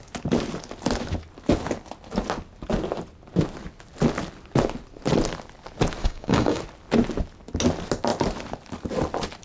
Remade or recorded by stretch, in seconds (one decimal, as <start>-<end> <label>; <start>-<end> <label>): 0.0-6.0 recorded; 6.0-6.6 remade; 6.6-9.4 recorded